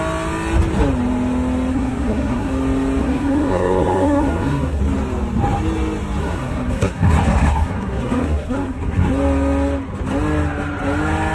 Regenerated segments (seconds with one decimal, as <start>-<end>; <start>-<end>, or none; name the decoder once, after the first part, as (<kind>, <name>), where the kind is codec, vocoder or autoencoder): 1.7-2.5 (codec, SNAC); 3.0-4.8; 6.2-9.1